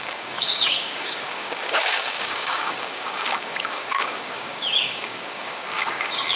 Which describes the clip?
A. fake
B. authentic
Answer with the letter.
A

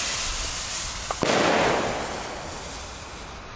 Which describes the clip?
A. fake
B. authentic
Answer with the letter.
B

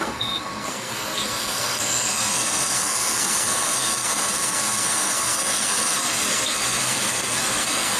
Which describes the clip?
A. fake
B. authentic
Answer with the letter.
A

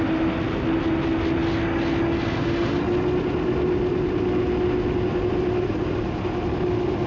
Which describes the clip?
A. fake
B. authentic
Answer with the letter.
B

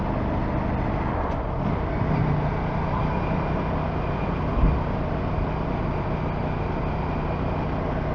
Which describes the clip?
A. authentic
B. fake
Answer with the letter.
A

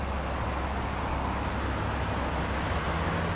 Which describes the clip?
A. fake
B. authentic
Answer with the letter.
B